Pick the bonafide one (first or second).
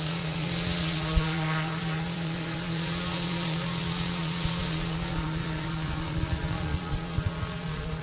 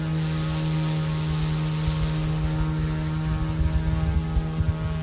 second